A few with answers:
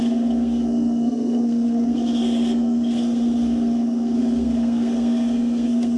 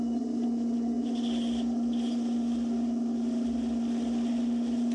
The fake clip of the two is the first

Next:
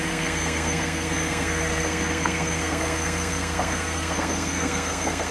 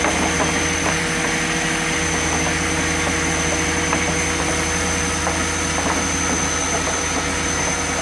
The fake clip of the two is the first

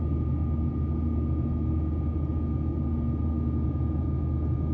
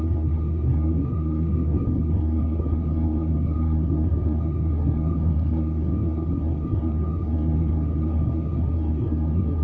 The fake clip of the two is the second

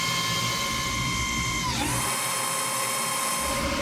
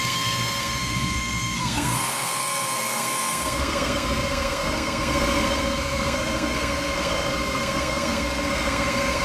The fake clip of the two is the second